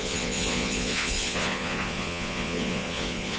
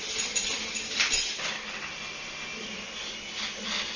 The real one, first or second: second